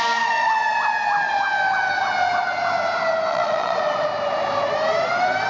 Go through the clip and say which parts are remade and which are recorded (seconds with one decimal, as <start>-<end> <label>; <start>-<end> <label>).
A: 0.0-3.3 recorded; 3.3-3.8 remade; 3.8-5.5 recorded